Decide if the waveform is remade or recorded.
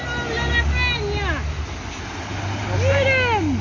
recorded